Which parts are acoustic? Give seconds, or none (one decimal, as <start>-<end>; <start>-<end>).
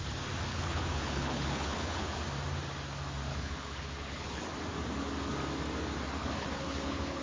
0.0-0.5; 2.2-3.3; 4.4-6.2